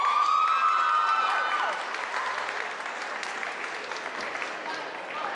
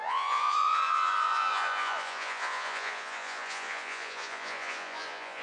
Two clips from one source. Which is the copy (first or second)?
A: second